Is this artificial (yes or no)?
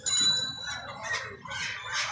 no